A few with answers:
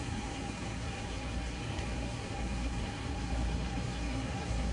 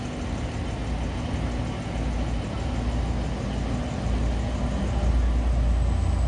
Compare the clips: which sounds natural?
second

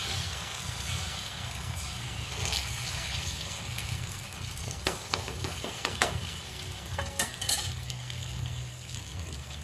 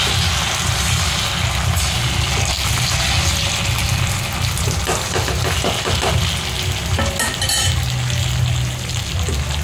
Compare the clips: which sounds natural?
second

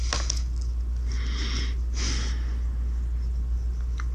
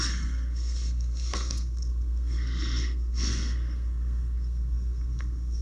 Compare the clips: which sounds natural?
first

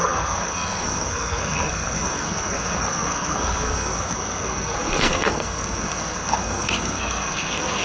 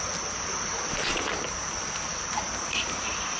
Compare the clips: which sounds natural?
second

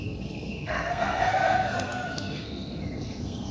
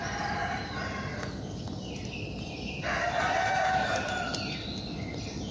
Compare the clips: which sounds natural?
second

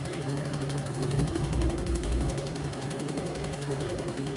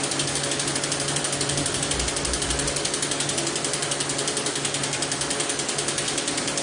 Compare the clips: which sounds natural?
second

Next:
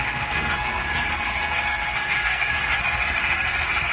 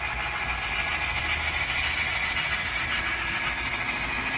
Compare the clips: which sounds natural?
second